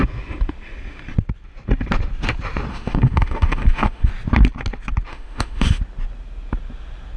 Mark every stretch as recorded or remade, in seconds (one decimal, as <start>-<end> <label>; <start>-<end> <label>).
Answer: 0.0-2.7 recorded; 2.7-4.1 remade; 4.1-5.1 recorded; 5.1-5.8 remade; 5.8-7.2 recorded